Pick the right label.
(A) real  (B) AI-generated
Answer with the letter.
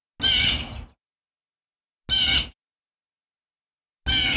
A